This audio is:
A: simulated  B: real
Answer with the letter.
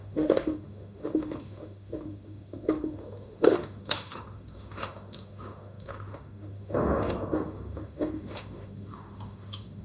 A